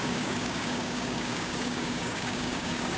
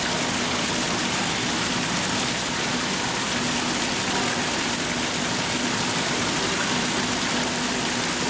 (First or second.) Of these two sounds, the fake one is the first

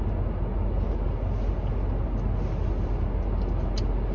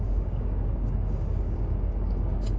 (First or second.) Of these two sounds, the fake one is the second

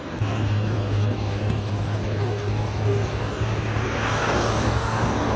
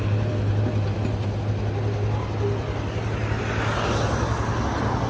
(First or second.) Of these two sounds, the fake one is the first